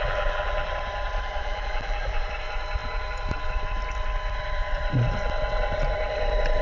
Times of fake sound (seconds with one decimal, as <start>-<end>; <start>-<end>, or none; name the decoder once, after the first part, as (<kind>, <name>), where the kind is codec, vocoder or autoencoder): 0.0-0.7 (vocoder, BigVGAN v2); 1.4-2.2